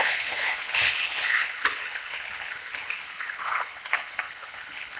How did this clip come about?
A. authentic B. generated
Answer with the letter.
B